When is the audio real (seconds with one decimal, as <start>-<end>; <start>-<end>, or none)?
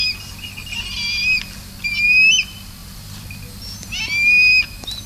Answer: 0.0-5.1